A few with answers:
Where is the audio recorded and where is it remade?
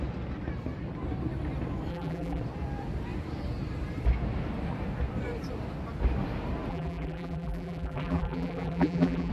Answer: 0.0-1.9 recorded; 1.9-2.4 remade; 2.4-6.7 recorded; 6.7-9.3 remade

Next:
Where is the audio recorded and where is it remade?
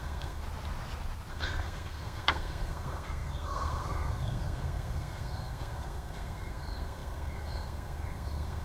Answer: 0.0-0.4 remade; 0.4-1.3 recorded; 1.3-8.6 remade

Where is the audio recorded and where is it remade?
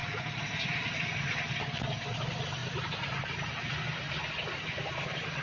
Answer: 0.0-5.4 recorded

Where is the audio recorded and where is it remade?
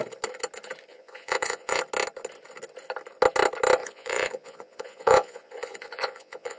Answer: 0.0-0.9 recorded; 0.9-1.8 remade; 1.8-3.8 recorded; 3.8-6.6 remade